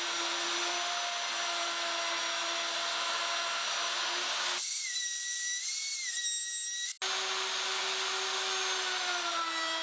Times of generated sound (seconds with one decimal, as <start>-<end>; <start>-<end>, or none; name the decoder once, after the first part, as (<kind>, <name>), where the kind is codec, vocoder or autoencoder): 4.2-4.8 (codec, DAC)